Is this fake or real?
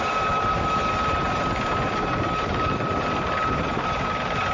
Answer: real